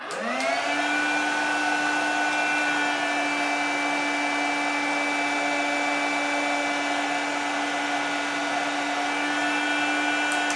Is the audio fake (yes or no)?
no